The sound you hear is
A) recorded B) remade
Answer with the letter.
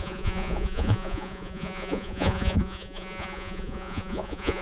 B